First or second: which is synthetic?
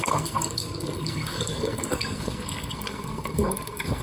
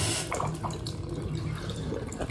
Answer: first